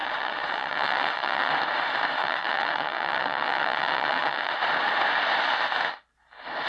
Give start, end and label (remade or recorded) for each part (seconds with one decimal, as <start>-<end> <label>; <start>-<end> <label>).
0.0-1.5 remade; 1.5-2.2 recorded; 2.2-4.5 remade; 4.5-6.7 recorded